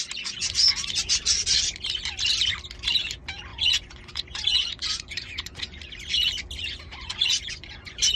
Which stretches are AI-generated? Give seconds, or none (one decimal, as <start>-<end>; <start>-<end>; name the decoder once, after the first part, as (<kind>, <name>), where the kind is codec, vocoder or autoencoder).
3.5-5.8 (vocoder, Vocos); 6.9-8.2